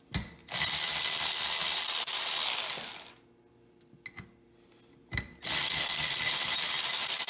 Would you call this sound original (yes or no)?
yes